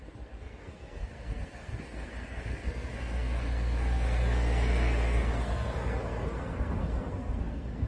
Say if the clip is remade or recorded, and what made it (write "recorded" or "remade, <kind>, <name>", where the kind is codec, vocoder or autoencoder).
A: remade, codec, SNAC